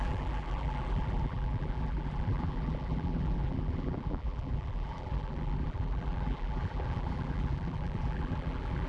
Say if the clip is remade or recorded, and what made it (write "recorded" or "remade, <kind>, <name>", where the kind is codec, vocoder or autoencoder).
remade, vocoder, BigVGAN v2